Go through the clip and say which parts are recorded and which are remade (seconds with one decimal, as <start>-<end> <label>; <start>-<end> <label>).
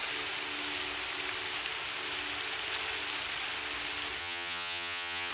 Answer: 0.0-4.2 recorded; 4.2-5.3 remade